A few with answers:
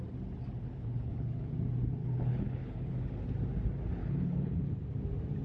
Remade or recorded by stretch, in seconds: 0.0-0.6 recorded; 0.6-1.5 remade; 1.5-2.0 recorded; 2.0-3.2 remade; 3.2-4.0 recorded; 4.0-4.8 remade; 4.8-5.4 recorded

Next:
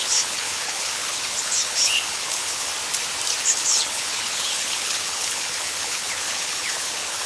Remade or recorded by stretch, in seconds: 0.0-2.7 remade; 2.7-3.4 recorded; 3.4-7.3 remade

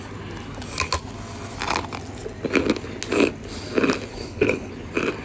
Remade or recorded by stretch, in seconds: 0.0-4.1 recorded; 4.1-4.7 remade; 4.7-5.2 recorded

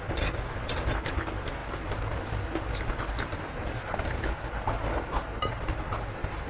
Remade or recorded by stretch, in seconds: 0.0-6.5 recorded

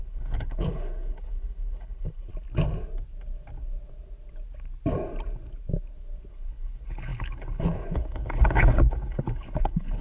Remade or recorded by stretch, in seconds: 0.0-2.3 remade; 2.3-6.3 recorded; 6.3-10.0 remade

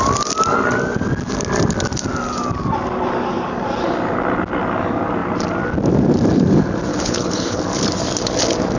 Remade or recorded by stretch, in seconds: 0.0-6.9 recorded; 6.9-7.6 remade; 7.6-8.8 recorded

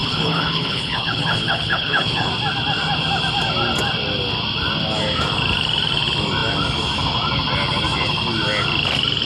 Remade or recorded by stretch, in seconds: 0.0-2.3 remade; 2.3-9.3 recorded

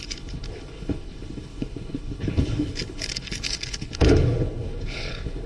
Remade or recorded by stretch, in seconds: 0.0-5.5 remade